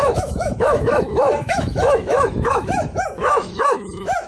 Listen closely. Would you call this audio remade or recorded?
remade